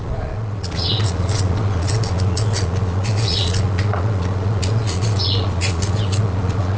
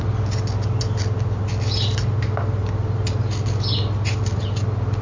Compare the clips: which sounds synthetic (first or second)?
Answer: first